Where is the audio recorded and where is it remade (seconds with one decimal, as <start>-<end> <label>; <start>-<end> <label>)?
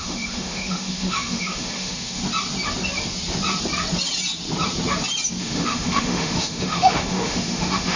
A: 0.0-2.2 remade; 2.2-5.4 recorded; 5.4-8.0 remade